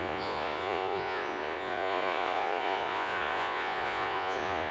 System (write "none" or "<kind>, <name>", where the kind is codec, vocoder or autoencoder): vocoder, Vocos